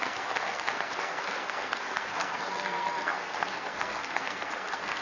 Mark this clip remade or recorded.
remade